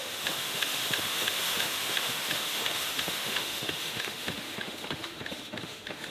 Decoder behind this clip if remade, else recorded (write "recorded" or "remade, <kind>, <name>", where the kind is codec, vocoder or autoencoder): remade, autoencoder, DAC-VAE